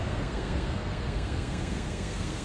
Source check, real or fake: fake